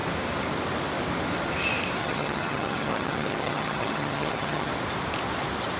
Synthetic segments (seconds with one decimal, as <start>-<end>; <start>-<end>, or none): 2.0-4.7